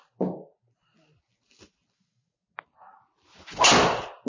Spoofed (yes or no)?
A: no